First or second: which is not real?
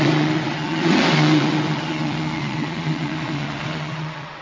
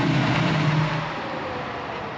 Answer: first